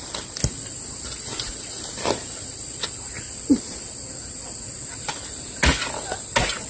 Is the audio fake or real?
real